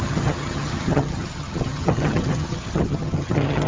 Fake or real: fake